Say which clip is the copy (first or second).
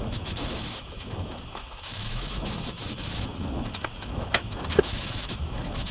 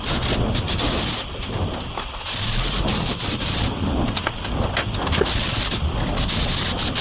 first